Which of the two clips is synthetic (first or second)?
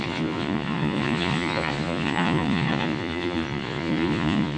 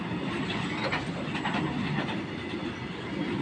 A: first